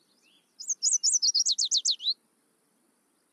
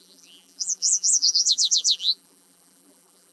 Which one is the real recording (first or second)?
first